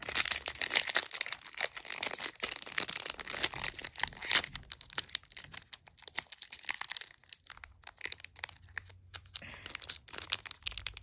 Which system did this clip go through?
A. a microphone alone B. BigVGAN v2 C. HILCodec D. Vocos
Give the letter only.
A